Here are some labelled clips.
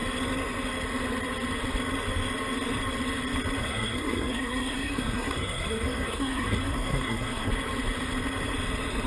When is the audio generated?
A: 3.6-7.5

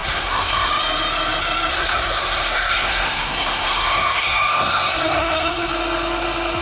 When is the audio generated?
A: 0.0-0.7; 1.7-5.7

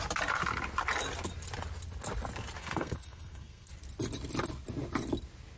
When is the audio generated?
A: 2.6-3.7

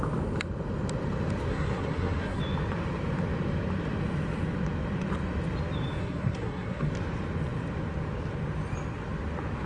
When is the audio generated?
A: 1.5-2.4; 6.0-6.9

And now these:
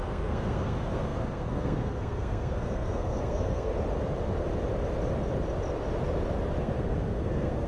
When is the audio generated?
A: 0.0-3.7; 6.6-7.7

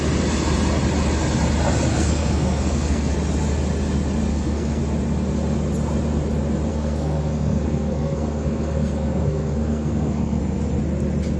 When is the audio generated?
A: 1.9-3.1; 4.3-4.8; 6.7-10.4